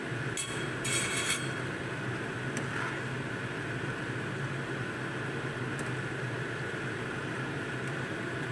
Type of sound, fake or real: real